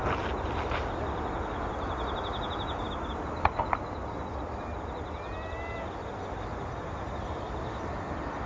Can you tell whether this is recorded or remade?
recorded